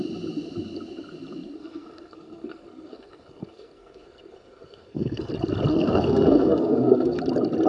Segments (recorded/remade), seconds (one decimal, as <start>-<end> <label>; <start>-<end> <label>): 0.0-1.6 recorded; 1.6-5.3 remade; 5.3-5.7 recorded; 5.7-7.2 remade; 7.2-7.7 recorded